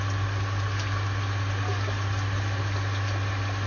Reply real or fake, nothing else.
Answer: real